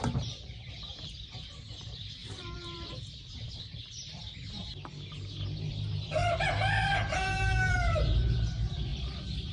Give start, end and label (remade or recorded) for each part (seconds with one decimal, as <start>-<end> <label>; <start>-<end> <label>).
0.0-4.1 remade; 4.1-5.7 recorded; 5.7-8.9 remade; 8.9-9.5 recorded